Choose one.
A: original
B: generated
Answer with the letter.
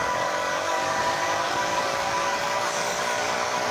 B